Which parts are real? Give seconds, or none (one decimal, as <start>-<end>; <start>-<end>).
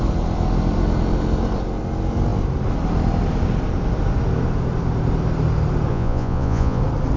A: 0.0-5.9; 6.8-7.2